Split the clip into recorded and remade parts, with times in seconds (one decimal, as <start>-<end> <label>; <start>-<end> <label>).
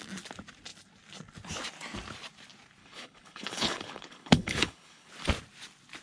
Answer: 0.0-2.8 recorded; 2.8-5.1 remade; 5.1-6.0 recorded